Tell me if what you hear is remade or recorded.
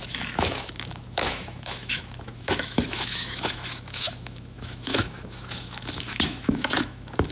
remade